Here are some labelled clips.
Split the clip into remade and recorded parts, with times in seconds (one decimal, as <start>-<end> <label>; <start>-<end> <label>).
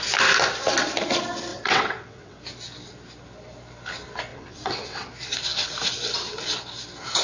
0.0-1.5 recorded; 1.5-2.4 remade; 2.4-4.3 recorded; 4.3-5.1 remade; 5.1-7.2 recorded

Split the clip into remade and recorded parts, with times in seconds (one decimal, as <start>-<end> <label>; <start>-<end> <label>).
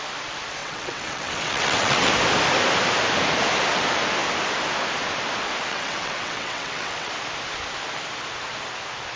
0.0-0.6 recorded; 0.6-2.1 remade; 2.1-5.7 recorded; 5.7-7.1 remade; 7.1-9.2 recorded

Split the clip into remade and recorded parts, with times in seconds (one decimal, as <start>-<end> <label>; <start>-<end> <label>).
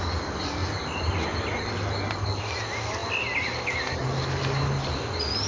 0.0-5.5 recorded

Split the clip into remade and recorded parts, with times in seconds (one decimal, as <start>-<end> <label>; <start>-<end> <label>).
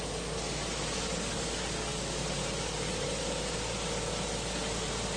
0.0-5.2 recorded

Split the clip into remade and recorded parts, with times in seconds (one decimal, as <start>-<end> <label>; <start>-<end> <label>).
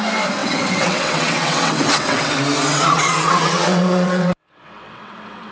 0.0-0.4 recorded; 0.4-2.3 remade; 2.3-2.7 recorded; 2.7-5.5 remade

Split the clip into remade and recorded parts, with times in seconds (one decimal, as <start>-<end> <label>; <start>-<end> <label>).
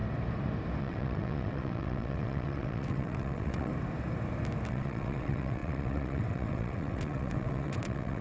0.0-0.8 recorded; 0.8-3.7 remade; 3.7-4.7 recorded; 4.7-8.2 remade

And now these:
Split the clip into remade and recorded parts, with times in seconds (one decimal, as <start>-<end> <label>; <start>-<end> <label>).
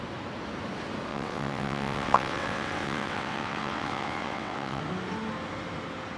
0.0-1.1 recorded; 1.1-4.8 remade; 4.8-6.2 recorded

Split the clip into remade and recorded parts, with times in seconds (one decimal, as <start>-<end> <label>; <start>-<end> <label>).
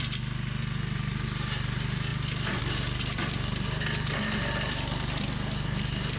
0.0-6.2 recorded